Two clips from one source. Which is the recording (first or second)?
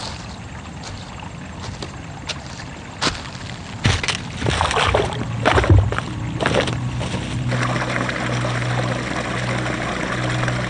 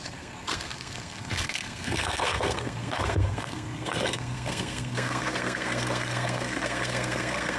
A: first